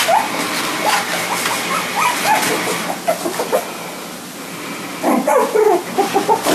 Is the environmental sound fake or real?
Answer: real